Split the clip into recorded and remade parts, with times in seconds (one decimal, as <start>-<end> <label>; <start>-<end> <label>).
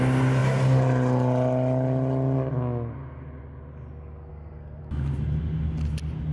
0.0-4.3 recorded; 4.3-4.8 remade; 4.8-6.3 recorded